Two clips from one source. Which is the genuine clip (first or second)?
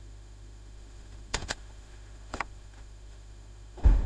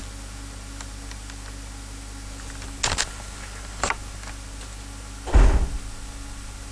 second